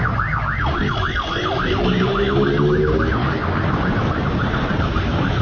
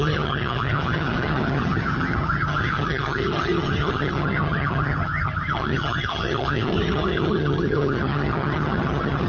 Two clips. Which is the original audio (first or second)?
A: first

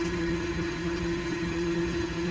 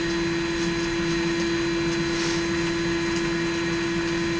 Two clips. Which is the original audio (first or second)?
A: second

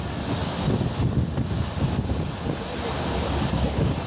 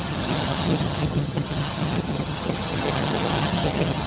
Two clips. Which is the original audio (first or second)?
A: first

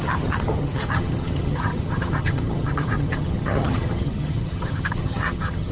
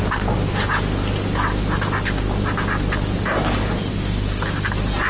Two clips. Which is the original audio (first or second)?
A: second